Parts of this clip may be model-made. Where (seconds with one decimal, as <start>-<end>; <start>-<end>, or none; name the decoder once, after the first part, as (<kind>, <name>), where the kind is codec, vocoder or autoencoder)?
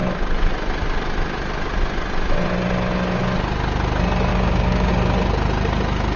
4.3-4.9 (codec, DAC)